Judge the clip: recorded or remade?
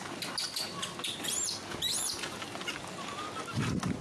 recorded